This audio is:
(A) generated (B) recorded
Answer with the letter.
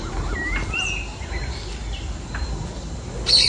B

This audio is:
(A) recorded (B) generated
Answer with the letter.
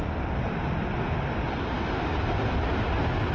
A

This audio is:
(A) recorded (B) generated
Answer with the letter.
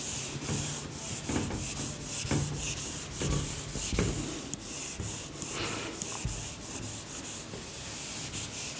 A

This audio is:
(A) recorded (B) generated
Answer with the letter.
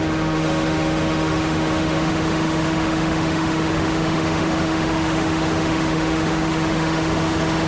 B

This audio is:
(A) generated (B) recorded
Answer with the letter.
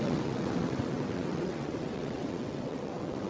A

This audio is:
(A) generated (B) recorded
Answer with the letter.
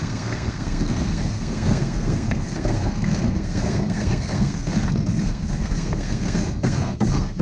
A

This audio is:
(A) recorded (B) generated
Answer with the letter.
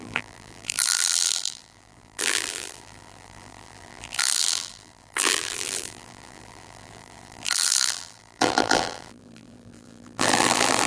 B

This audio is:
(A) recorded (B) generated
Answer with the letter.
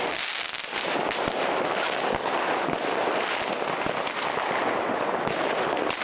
A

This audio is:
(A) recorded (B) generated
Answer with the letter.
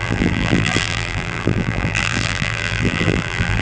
B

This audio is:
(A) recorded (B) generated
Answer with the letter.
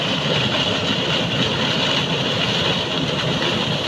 A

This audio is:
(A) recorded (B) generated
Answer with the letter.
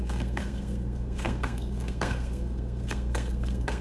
B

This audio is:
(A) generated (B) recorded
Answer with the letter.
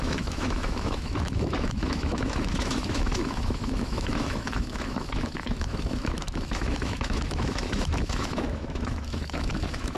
A